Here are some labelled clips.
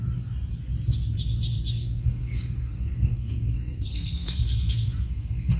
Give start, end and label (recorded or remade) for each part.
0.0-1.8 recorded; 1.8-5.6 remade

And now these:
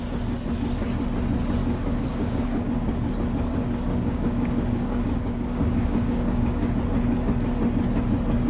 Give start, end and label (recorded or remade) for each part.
0.0-1.6 recorded; 1.6-3.1 remade; 3.1-3.6 recorded; 3.6-6.8 remade; 6.8-8.5 recorded

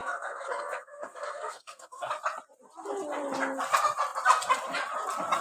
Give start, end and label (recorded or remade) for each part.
0.0-2.1 remade; 2.1-5.4 recorded

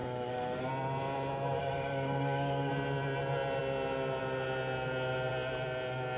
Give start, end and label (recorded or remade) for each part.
0.0-0.7 remade; 0.7-1.6 recorded; 1.6-2.7 remade; 2.7-6.2 recorded

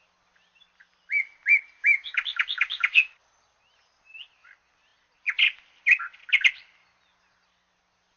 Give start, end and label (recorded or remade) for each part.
0.0-1.8 recorded; 1.8-3.1 remade; 3.1-8.2 recorded

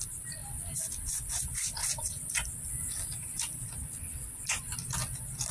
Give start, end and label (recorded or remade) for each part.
0.0-1.8 recorded; 1.8-4.6 remade; 4.6-5.5 recorded

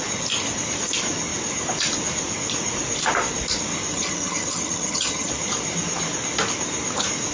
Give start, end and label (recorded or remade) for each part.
0.0-3.9 recorded; 3.9-5.3 remade; 5.3-7.3 recorded

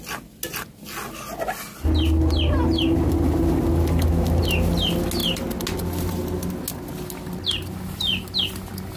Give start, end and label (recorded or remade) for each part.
0.0-9.0 recorded